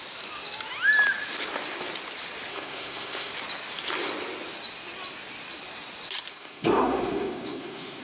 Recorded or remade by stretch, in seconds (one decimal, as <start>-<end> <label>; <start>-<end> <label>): 0.0-2.5 recorded; 2.5-3.3 remade; 3.3-6.3 recorded; 6.3-8.0 remade